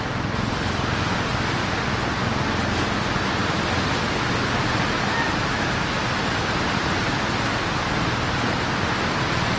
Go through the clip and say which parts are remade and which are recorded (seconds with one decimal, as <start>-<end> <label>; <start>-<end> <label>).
0.0-9.6 recorded

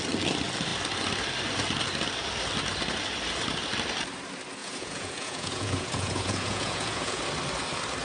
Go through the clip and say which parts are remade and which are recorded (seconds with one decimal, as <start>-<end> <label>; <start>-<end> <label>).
0.0-4.6 recorded; 4.6-7.2 remade; 7.2-8.0 recorded

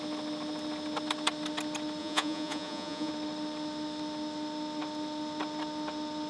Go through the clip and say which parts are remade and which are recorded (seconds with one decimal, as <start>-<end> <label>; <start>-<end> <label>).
0.0-2.0 recorded; 2.0-3.1 remade; 3.1-6.3 recorded